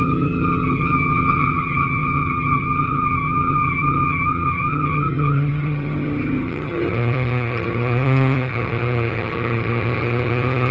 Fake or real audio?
fake